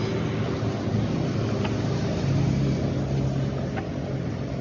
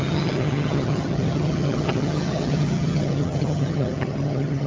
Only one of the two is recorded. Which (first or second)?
first